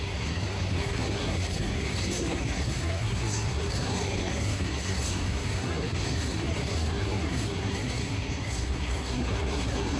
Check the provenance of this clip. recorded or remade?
remade